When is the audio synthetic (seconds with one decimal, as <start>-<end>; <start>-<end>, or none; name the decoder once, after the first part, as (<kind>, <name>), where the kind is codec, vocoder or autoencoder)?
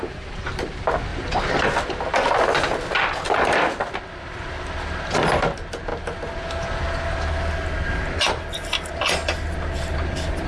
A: 1.1-2.3 (vocoder, BigVGAN v2)